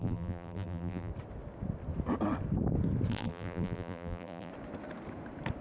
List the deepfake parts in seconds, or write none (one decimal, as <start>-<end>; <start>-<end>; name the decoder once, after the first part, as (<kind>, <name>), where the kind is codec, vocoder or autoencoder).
0.0-1.1 (vocoder, BigVGAN v2); 3.1-4.5